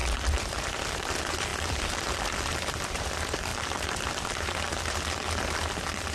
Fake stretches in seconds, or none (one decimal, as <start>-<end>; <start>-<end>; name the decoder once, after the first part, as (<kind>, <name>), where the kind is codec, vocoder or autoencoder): 0.0-1.1 (vocoder, BigVGAN v2); 1.5-3.0; 3.5-4.1